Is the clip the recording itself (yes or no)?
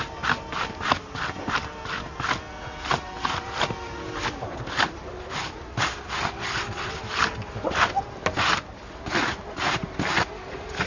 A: yes